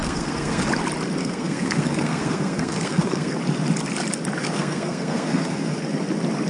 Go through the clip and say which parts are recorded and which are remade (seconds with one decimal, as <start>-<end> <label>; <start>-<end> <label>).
0.0-0.6 remade; 0.6-1.2 recorded; 1.2-3.3 remade; 3.3-4.4 recorded; 4.4-5.8 remade; 5.8-6.5 recorded